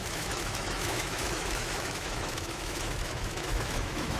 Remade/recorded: remade